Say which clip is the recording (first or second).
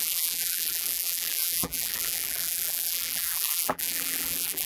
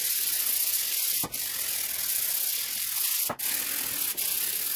second